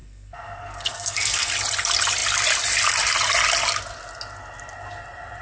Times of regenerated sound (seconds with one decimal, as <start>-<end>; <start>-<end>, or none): 0.0-1.5